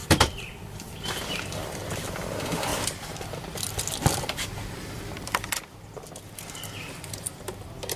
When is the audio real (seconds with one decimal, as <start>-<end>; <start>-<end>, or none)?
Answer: none